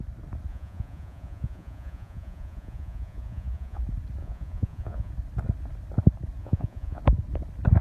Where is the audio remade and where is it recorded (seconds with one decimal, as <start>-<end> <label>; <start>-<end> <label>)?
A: 0.0-0.5 recorded; 0.5-3.8 remade; 3.8-4.2 recorded; 4.2-5.1 remade; 5.1-6.4 recorded; 6.4-7.0 remade; 7.0-7.8 recorded